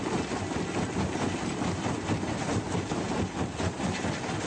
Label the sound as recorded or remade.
recorded